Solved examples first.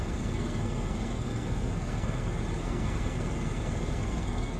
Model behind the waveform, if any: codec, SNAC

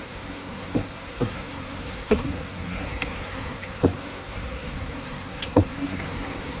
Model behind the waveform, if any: codec, SNAC